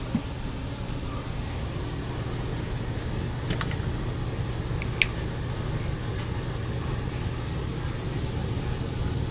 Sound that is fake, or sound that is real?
real